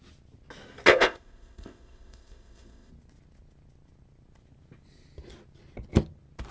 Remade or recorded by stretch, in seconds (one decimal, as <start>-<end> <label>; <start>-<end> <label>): 0.0-0.9 recorded; 0.9-2.9 remade; 2.9-6.5 recorded